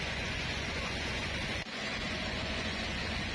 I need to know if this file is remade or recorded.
remade